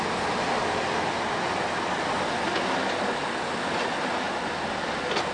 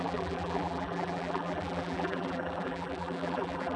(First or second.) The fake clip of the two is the second